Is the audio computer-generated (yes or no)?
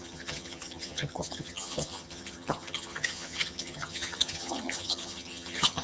yes